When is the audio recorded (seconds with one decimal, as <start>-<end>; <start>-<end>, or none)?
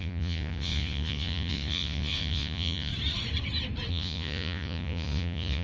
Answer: 2.9-3.9